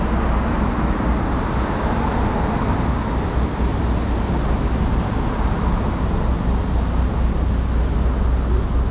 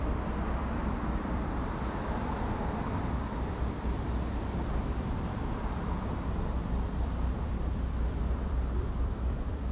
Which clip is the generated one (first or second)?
second